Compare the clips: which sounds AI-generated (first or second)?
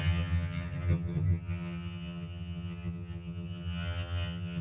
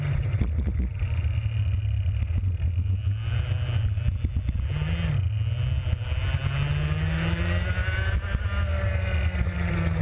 first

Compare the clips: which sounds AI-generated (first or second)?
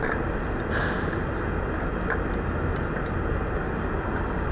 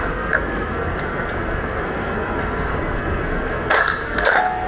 second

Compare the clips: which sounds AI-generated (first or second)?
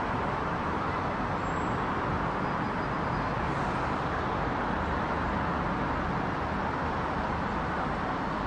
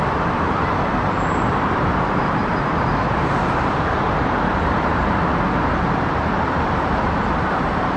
second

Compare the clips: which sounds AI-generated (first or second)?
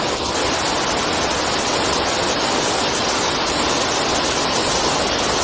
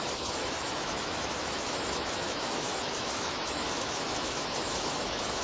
second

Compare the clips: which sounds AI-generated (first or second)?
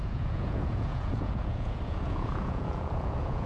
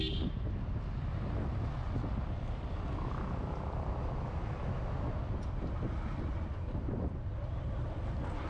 first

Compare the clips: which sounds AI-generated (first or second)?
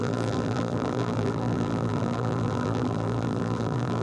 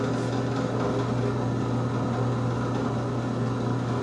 first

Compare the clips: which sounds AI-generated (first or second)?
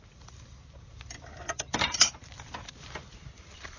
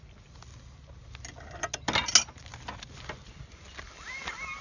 first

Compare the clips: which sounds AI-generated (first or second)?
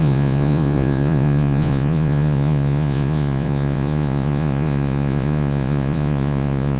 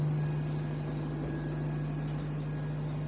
first